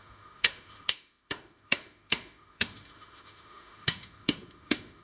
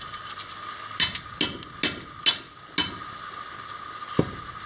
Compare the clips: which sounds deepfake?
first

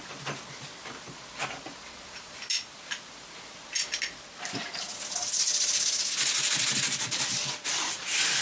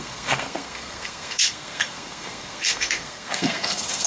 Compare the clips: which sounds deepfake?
second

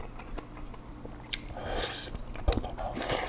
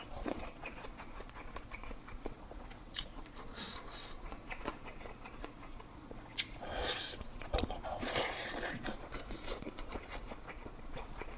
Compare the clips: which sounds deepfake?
second